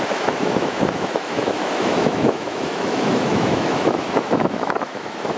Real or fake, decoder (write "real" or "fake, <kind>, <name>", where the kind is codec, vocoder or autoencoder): fake, autoencoder, DAC-VAE